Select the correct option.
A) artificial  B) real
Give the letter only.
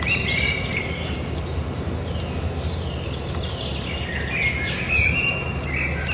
B